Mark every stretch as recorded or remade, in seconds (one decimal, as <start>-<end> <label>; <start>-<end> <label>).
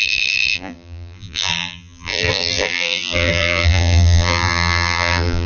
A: 0.0-5.5 remade